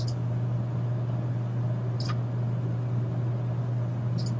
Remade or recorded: recorded